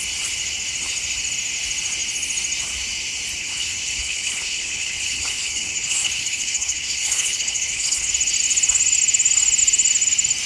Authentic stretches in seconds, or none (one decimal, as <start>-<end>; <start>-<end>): 0.0-3.4; 8.1-10.5